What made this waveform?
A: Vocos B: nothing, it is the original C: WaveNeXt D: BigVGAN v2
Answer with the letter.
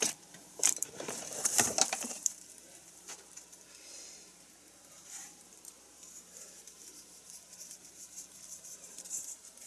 D